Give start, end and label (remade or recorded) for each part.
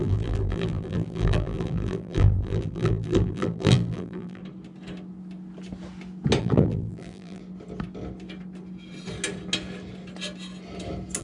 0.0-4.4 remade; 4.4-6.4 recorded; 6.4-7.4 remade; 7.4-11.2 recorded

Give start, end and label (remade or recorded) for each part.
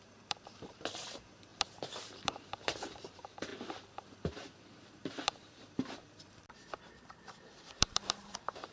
0.0-8.7 remade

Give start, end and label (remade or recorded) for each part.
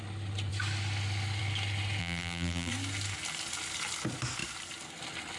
0.0-2.0 recorded; 2.0-2.7 remade; 2.7-5.4 recorded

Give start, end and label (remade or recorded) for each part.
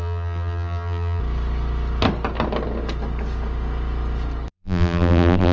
0.0-1.2 remade; 1.2-4.5 recorded; 4.5-5.5 remade